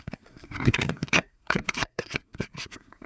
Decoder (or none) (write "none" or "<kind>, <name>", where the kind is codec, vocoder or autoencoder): codec, SNAC